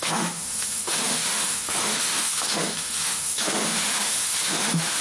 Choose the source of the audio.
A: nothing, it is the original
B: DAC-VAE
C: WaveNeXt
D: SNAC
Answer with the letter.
B